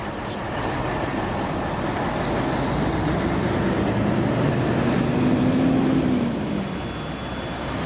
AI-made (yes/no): no